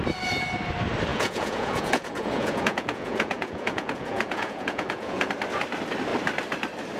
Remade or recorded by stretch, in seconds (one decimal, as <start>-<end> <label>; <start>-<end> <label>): 0.0-1.1 recorded; 1.1-5.3 remade; 5.3-7.0 recorded